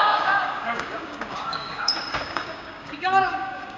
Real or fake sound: fake